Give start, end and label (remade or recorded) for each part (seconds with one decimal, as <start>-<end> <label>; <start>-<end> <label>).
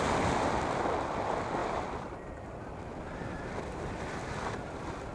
0.0-1.6 recorded; 1.6-5.1 remade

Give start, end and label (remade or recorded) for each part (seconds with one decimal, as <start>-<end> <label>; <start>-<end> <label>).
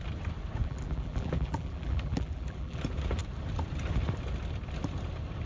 0.0-0.6 recorded; 0.6-2.8 remade; 2.8-5.5 recorded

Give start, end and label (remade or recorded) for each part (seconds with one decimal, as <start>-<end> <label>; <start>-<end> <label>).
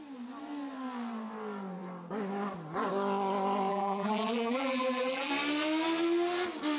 0.0-3.7 recorded; 3.7-5.3 remade; 5.3-6.8 recorded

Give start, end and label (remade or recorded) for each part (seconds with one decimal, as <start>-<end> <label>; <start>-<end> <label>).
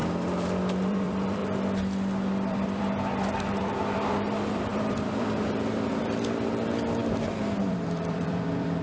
0.0-0.9 recorded; 0.9-1.4 remade; 1.4-2.3 recorded; 2.3-7.0 remade; 7.0-7.7 recorded; 7.7-8.8 remade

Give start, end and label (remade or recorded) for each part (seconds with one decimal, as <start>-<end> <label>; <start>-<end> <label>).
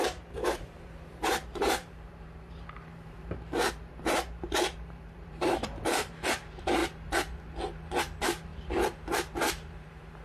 0.0-6.8 remade; 6.8-8.0 recorded; 8.0-8.5 remade; 8.5-9.5 recorded; 9.5-10.2 remade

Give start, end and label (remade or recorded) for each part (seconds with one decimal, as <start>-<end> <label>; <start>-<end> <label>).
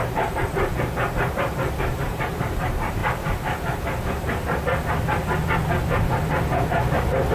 0.0-3.0 remade; 3.0-7.3 recorded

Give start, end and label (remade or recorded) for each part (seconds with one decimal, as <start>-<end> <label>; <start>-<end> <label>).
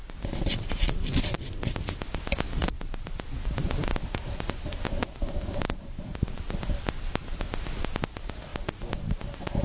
0.0-9.6 remade